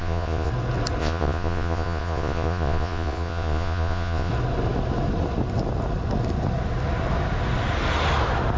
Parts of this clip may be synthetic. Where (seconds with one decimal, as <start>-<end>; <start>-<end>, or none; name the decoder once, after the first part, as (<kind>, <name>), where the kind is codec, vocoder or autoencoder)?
0.0-0.5 (vocoder, Vocos); 1.0-4.3